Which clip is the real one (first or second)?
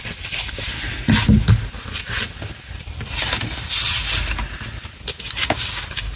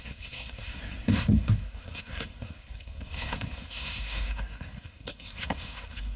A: first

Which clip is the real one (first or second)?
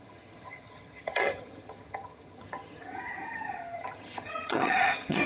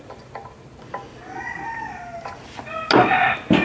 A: second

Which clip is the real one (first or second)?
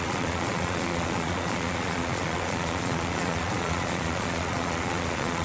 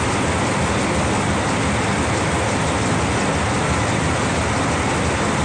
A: second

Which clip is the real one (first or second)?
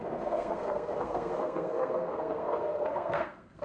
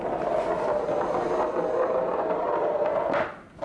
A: second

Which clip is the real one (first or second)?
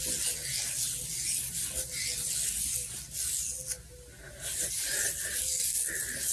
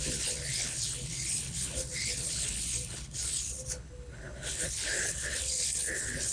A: first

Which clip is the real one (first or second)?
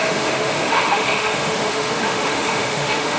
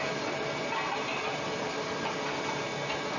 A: second